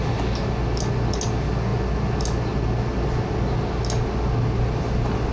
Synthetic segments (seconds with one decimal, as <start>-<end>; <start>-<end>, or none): none